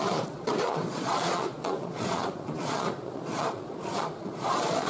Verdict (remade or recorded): remade